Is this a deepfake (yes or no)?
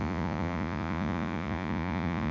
yes